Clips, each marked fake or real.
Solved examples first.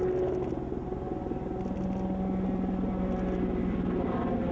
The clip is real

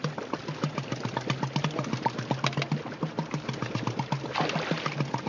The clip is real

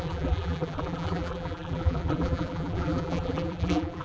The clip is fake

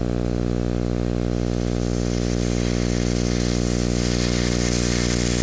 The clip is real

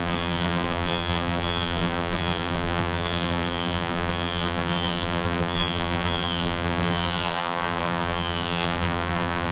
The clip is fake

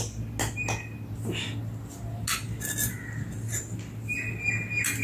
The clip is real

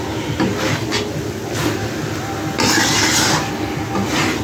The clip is real